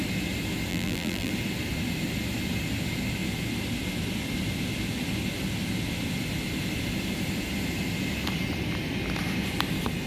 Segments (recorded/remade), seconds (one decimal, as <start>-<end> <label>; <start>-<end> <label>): 0.0-0.7 recorded; 0.7-1.3 remade; 1.3-10.1 recorded